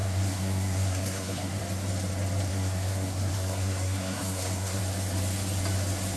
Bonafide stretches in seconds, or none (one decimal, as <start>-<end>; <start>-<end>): 1.6-2.5; 4.8-6.2